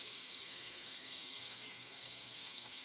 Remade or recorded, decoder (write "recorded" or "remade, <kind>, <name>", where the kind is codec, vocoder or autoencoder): remade, codec, SNAC